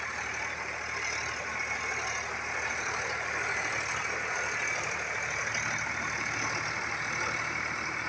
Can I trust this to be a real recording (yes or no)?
yes